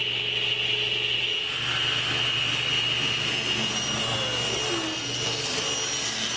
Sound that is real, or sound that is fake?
real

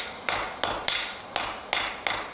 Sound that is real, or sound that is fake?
real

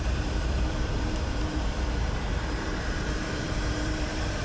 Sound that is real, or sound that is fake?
fake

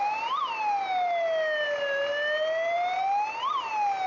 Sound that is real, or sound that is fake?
real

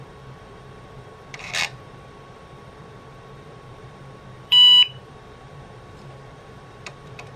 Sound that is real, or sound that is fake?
fake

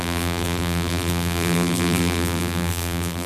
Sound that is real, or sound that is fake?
fake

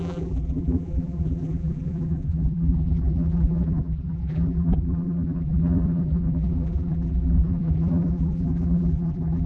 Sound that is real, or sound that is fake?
fake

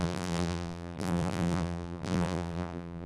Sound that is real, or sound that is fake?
fake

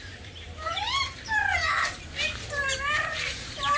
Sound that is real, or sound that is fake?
fake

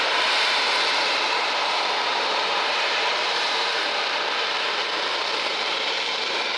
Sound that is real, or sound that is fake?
fake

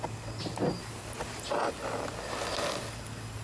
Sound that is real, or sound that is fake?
fake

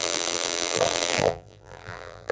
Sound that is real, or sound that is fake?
fake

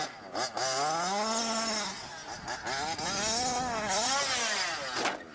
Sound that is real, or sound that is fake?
real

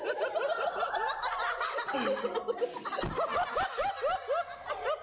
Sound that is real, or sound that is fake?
real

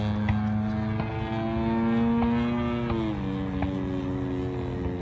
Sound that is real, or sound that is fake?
real